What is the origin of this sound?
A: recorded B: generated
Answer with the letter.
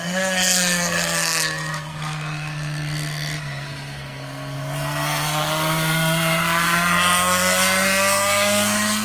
B